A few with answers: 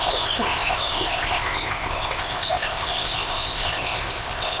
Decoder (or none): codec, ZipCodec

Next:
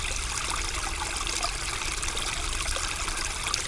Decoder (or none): none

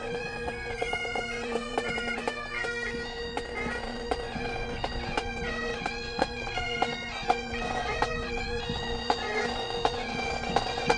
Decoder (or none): vocoder, Vocos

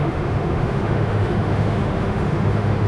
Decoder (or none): autoencoder, DAC-VAE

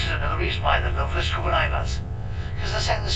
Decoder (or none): vocoder, WaveNeXt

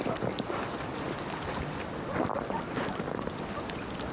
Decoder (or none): none